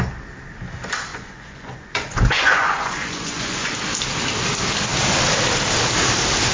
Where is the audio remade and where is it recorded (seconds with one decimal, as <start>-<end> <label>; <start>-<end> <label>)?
0.0-1.1 recorded; 1.1-3.7 remade; 3.7-6.5 recorded